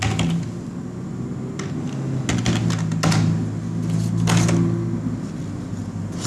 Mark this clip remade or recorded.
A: recorded